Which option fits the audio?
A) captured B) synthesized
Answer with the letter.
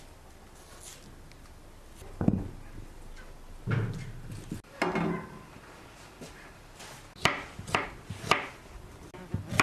A